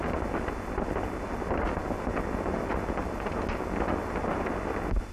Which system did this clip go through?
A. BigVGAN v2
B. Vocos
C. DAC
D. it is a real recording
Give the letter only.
D